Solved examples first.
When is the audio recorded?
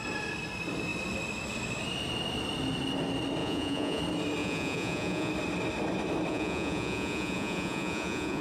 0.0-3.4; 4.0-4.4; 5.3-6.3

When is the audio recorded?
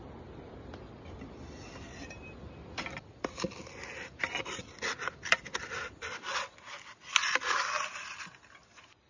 0.0-9.1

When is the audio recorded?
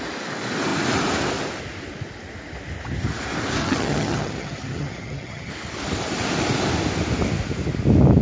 0.0-3.6; 5.5-8.2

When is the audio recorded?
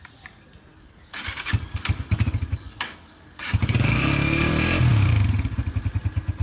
0.0-0.7; 4.5-6.4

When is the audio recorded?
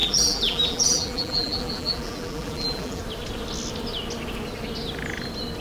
3.0-5.6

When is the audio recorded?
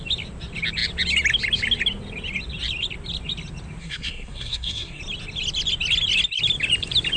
0.0-3.8; 5.0-7.2